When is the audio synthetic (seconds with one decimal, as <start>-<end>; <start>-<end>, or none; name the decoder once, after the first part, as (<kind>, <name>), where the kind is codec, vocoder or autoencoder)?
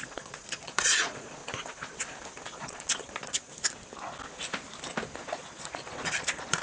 0.0-1.4 (vocoder, Vocos); 2.6-3.5; 5.2-6.6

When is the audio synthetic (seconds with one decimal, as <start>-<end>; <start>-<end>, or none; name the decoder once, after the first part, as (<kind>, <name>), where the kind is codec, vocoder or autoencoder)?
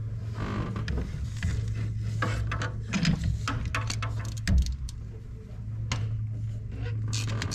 none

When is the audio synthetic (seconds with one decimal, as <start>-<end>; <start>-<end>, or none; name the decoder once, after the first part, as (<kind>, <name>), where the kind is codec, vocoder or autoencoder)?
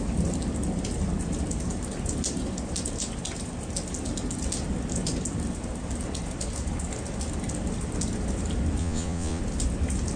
8.8-9.4 (vocoder, Vocos)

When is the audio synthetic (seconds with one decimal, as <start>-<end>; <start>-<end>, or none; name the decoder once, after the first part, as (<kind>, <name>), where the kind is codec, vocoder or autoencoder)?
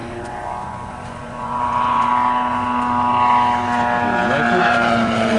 0.0-2.1 (vocoder, Vocos); 4.6-5.4